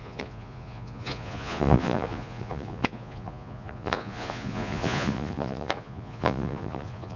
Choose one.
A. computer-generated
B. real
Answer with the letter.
A